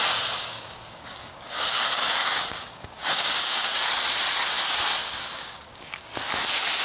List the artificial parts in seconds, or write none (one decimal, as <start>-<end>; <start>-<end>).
0.5-3.8; 5.0-6.1